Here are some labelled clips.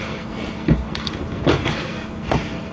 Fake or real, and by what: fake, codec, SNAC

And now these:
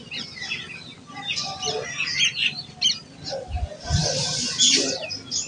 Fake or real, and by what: real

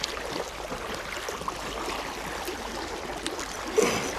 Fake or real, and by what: real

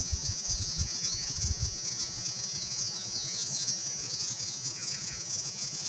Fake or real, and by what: fake, vocoder, Vocos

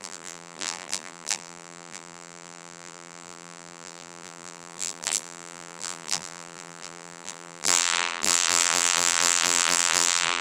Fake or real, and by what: fake, vocoder, BigVGAN v2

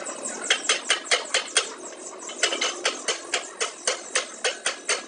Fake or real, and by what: real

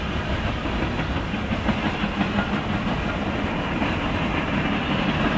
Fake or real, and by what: real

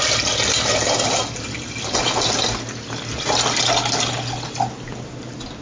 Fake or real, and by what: real